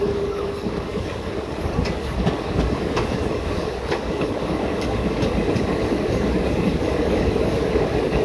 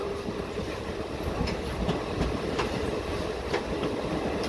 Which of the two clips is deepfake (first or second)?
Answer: first